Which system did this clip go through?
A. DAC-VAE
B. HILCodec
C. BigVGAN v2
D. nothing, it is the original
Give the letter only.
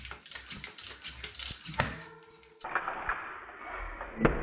D